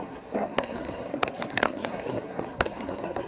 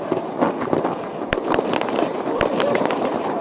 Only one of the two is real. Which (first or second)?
second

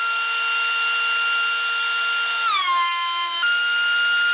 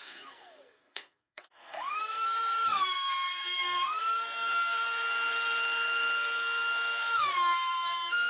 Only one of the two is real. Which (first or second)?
first